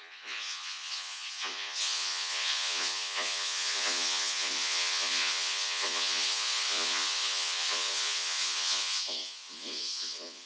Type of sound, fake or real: fake